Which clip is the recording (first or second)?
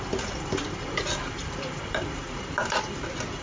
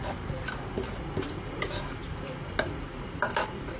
second